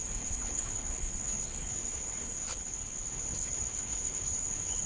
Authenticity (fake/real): fake